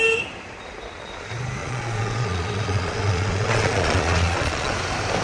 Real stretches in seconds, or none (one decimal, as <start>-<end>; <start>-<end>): 0.0-1.6; 4.7-5.2